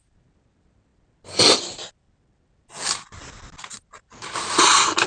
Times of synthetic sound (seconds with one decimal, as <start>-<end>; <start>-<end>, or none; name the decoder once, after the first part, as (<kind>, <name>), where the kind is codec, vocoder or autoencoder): none